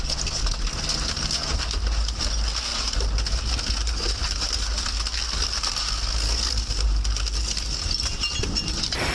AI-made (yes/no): no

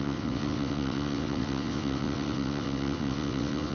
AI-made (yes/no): yes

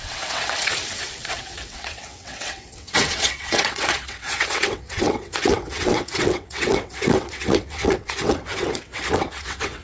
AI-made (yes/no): yes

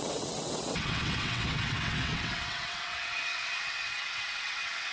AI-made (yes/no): yes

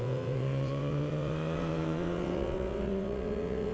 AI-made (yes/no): yes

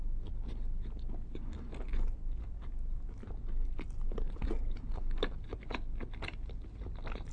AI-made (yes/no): no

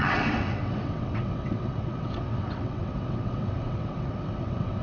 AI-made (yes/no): yes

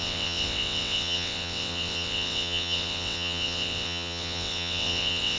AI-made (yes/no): yes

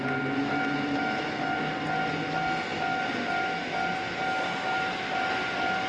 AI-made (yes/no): no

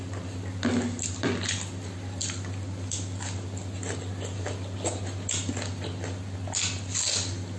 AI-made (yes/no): no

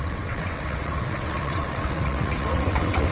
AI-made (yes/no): yes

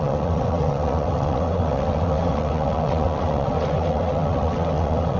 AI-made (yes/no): yes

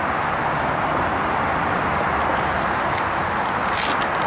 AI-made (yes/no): no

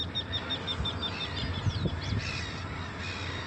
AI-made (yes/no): no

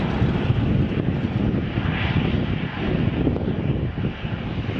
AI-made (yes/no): no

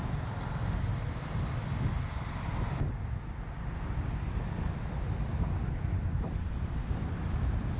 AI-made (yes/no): no